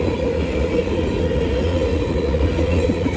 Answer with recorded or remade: remade